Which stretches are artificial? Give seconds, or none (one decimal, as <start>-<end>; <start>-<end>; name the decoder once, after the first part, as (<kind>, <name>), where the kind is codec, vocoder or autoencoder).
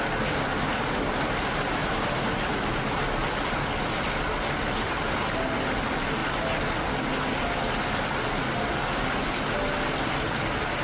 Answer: 1.8-3.0 (vocoder, BigVGAN v2)